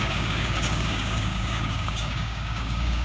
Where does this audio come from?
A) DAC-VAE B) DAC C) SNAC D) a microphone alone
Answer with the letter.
B